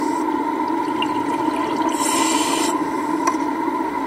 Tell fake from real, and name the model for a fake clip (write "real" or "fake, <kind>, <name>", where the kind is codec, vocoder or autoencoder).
real